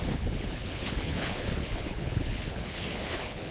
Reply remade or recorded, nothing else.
remade